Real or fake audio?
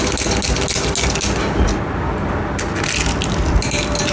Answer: real